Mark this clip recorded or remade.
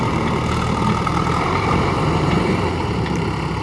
remade